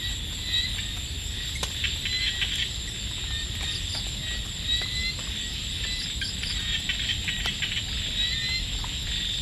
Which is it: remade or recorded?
recorded